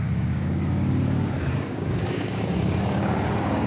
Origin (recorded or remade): remade